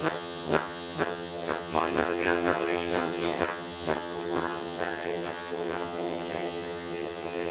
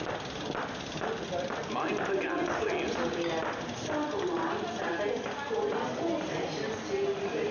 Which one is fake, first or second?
first